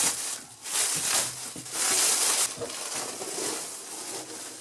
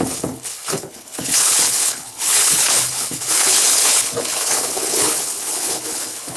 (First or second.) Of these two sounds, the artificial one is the second